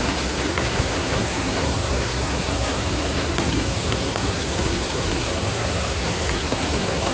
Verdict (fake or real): fake